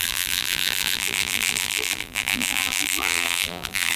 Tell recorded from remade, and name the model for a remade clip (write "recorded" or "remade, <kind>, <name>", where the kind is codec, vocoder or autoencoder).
remade, vocoder, BigVGAN v2